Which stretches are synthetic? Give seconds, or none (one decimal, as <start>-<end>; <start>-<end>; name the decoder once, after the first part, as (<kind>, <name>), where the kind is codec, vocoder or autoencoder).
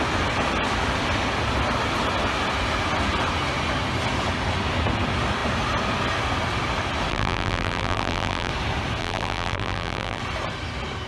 7.1-8.5 (vocoder, BigVGAN v2); 9.0-10.2